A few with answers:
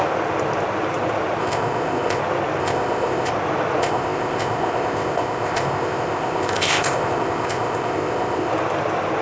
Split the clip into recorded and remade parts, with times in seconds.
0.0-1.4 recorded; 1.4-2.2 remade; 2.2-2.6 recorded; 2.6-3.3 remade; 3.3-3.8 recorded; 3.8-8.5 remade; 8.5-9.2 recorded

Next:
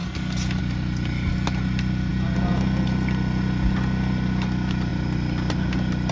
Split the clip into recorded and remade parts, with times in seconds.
0.0-6.1 recorded

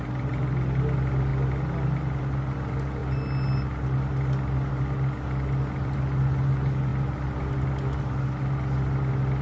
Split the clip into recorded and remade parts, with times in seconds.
0.0-9.4 recorded

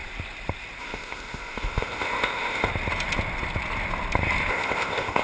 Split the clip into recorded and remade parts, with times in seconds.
0.0-0.8 recorded; 0.8-2.7 remade; 2.7-4.5 recorded; 4.5-5.2 remade

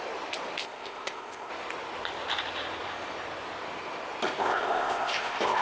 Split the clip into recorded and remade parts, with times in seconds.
0.0-0.6 recorded; 0.6-1.5 remade; 1.5-4.4 recorded; 4.4-5.6 remade

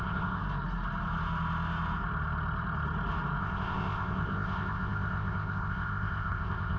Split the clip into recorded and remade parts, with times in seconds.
0.0-0.4 remade; 0.4-3.4 recorded; 3.4-6.8 remade